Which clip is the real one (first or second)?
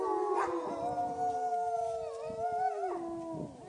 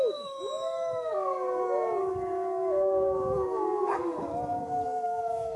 first